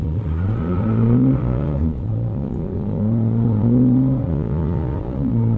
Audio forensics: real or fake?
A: fake